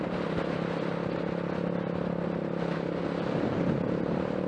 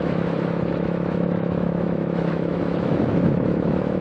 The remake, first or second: second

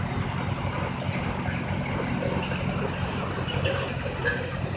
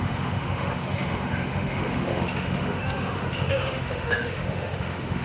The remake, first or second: second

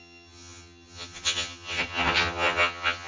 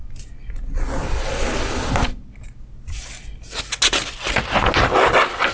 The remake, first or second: first